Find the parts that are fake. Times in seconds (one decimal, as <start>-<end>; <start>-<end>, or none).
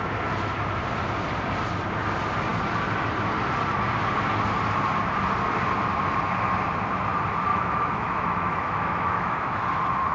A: 7.5-9.6